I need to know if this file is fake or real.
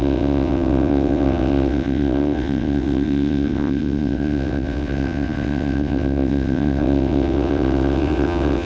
fake